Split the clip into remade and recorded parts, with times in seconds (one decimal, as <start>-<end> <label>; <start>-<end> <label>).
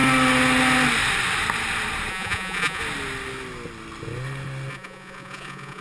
0.0-2.1 recorded; 2.1-2.8 remade; 2.8-4.7 recorded; 4.7-5.8 remade